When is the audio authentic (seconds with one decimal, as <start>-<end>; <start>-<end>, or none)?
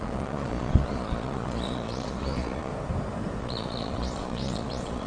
2.7-3.4